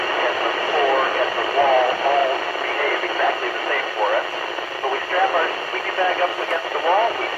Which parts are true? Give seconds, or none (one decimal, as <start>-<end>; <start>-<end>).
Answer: 0.0-7.4